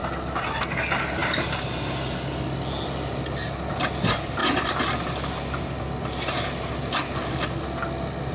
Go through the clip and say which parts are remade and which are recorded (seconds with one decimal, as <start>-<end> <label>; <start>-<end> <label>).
0.0-1.2 recorded; 1.2-2.2 remade; 2.2-8.3 recorded